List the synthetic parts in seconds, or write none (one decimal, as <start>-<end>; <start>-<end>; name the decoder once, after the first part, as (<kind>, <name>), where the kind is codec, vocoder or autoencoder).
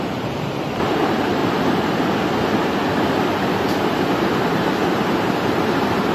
0.0-1.4 (vocoder, BigVGAN v2); 4.5-6.1